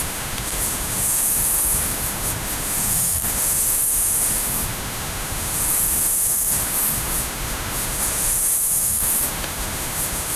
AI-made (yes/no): yes